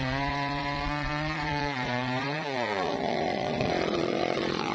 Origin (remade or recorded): remade